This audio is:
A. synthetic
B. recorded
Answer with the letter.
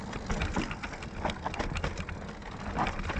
B